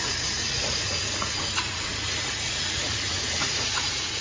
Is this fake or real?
fake